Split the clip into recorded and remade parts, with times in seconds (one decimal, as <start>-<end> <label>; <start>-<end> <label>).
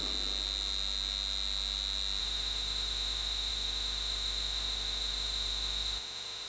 0.0-2.2 recorded; 2.2-6.5 remade